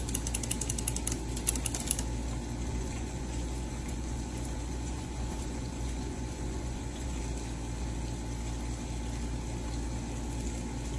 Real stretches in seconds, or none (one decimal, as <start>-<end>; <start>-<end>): 0.0-2.7; 7.2-11.0